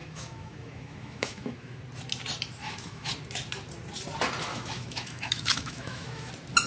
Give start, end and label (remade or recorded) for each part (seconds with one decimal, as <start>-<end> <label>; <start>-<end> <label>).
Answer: 0.0-1.8 remade; 1.8-2.6 recorded; 2.6-3.1 remade; 3.1-4.5 recorded; 4.5-6.3 remade; 6.3-6.7 recorded